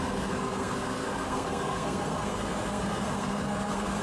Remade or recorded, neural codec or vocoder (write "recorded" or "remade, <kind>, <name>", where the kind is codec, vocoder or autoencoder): remade, codec, SNAC